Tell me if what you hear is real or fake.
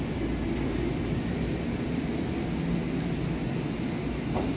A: real